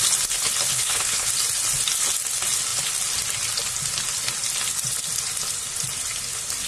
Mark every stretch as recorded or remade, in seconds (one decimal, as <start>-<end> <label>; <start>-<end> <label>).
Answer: 0.0-0.7 recorded; 0.7-1.3 remade; 1.3-6.7 recorded

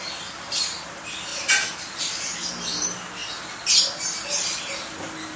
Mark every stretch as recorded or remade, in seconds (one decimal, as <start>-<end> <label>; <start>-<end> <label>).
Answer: 0.0-1.3 recorded; 1.3-2.0 remade; 2.0-5.4 recorded

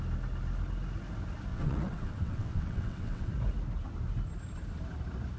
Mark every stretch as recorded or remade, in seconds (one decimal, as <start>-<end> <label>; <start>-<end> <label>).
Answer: 0.0-1.5 recorded; 1.5-3.3 remade; 3.3-5.4 recorded